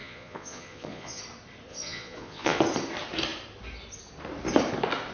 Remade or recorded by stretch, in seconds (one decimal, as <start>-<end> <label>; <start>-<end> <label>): 0.0-1.2 remade; 1.2-1.7 recorded; 1.7-2.6 remade; 2.6-5.1 recorded